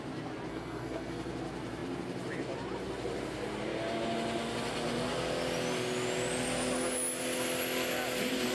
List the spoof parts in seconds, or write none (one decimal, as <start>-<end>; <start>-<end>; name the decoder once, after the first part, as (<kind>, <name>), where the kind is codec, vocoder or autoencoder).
0.5-1.3 (codec, SNAC)